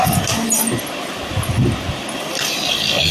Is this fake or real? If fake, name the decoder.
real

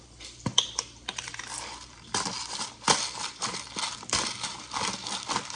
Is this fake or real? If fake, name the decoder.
fake, vocoder, BigVGAN v2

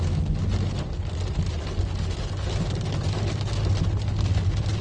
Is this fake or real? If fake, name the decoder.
real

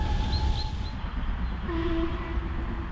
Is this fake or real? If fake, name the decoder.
real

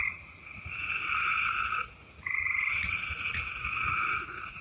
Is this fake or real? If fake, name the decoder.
fake, vocoder, Vocos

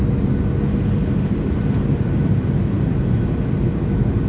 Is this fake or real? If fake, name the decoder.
real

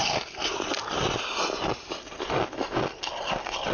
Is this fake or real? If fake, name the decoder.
real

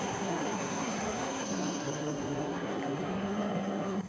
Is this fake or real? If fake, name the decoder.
fake, codec, SNAC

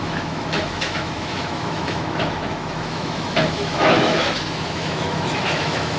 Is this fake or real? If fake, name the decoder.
fake, autoencoder, DAC-VAE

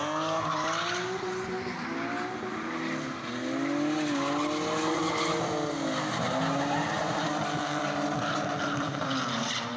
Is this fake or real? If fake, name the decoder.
real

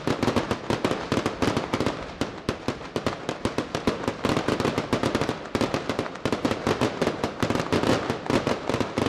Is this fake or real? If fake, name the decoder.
real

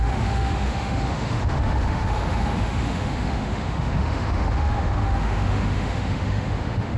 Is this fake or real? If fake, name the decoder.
fake, autoencoder, DAC-VAE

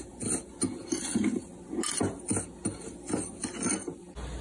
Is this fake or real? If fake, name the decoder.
real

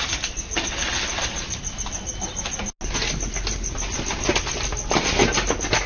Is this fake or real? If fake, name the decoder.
real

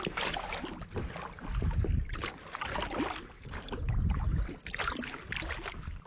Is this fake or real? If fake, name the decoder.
real